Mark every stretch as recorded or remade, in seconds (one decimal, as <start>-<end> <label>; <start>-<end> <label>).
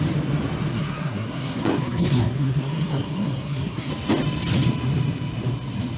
0.0-0.7 recorded; 0.7-3.9 remade; 3.9-6.0 recorded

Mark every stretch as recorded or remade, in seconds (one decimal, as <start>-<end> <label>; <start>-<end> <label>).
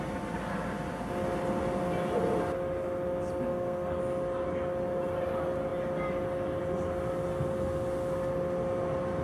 0.0-3.5 recorded; 3.5-4.0 remade; 4.0-9.2 recorded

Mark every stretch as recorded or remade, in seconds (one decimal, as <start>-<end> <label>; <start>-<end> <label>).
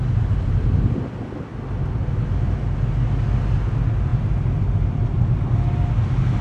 0.0-6.4 recorded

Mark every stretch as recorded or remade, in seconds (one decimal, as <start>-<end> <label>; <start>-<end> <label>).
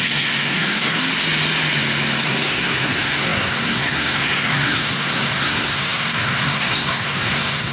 0.0-1.0 remade; 1.0-2.2 recorded; 2.2-7.7 remade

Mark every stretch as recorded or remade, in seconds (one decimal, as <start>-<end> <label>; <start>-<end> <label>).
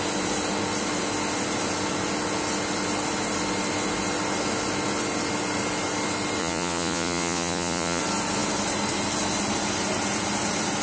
0.0-6.4 recorded; 6.4-8.0 remade; 8.0-10.8 recorded